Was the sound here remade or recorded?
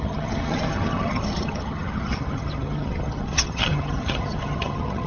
remade